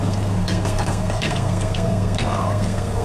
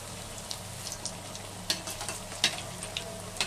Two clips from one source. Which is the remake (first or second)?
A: first